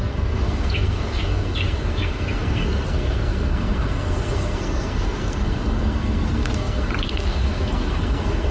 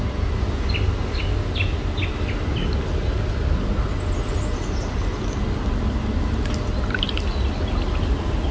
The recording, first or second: second